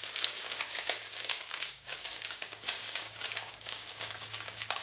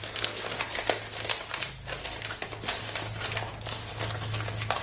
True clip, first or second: second